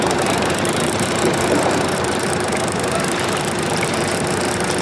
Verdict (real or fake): fake